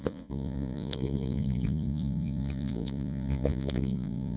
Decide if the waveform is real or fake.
fake